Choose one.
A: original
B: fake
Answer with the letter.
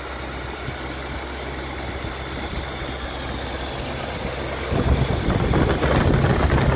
A